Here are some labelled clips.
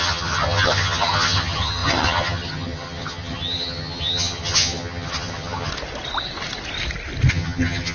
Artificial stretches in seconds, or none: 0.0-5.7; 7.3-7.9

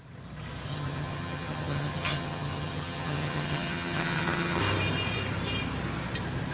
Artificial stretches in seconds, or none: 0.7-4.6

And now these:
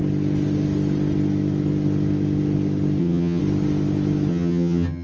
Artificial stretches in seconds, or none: 3.0-3.4; 4.3-5.0